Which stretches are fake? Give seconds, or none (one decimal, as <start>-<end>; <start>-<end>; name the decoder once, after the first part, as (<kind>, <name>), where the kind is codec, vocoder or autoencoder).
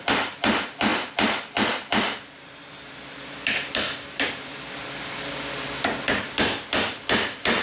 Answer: none